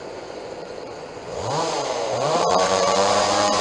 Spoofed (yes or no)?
yes